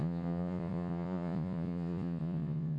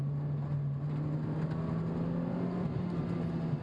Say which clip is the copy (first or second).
first